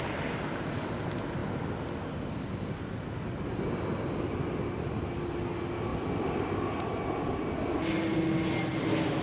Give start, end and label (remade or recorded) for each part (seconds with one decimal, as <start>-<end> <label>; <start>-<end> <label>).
0.0-9.2 recorded